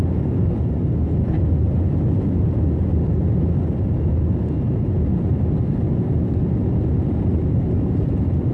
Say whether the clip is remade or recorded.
recorded